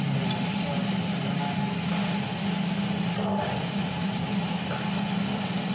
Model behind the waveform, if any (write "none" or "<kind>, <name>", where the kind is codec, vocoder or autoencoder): none